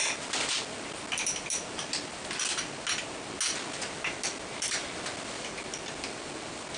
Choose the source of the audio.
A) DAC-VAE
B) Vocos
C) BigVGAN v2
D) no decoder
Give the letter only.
D